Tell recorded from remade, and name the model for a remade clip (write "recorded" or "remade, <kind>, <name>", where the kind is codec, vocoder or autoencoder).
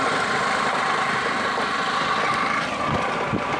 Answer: remade, vocoder, BigVGAN v2